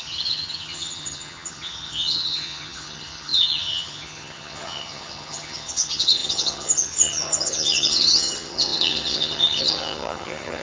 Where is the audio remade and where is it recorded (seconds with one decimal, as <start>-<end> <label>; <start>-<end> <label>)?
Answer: 0.0-10.6 remade